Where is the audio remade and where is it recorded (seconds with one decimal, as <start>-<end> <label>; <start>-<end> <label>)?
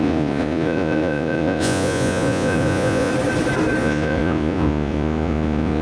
0.0-3.1 remade; 3.1-3.8 recorded; 3.8-5.8 remade